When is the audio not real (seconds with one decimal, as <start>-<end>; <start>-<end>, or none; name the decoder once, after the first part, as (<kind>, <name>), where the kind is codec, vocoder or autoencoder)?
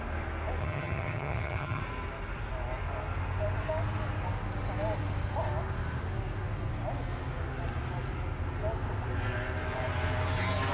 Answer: 0.6-1.8 (vocoder, HiFi-GAN)